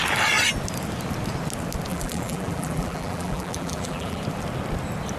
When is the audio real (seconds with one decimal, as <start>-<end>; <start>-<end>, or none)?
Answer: 0.0-1.9; 4.2-5.2